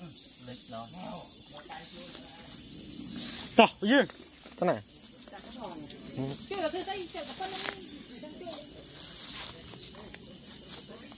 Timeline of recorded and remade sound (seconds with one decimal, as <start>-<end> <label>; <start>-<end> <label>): 0.0-11.2 recorded

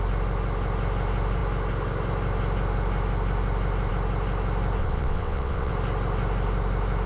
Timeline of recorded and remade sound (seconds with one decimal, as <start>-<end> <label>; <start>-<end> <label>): 0.0-4.8 recorded; 4.8-5.7 remade; 5.7-7.1 recorded

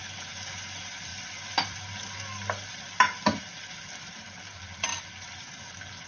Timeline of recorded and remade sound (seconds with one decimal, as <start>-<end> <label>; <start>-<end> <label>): 0.0-1.1 recorded; 1.1-3.4 remade; 3.4-4.9 recorded; 4.9-5.6 remade; 5.6-6.1 recorded

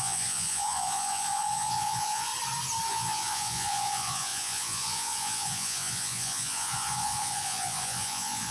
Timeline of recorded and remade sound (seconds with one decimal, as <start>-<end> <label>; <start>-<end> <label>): 0.0-2.3 remade; 2.3-2.9 recorded; 2.9-8.5 remade

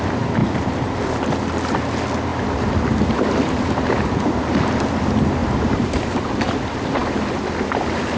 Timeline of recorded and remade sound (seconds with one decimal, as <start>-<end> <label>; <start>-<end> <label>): 0.0-0.4 recorded; 0.4-1.0 remade; 1.0-2.3 recorded; 2.3-4.4 remade; 4.4-5.4 recorded; 5.4-6.4 remade; 6.4-8.2 recorded

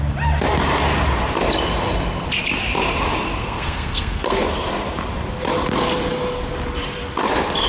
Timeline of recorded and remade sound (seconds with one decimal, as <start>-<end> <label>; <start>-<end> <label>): 0.0-3.4 recorded; 3.4-4.4 remade; 4.4-7.7 recorded

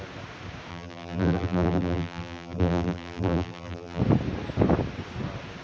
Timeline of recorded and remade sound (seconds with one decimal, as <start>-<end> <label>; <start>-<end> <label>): 0.0-0.7 recorded; 0.7-4.0 remade; 4.0-5.6 recorded